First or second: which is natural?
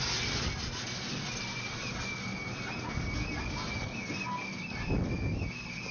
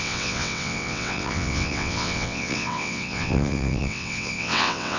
first